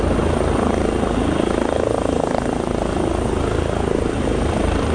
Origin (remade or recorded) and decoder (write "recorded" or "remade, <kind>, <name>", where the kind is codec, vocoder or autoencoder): recorded